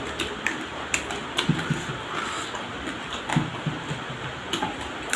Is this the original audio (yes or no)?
yes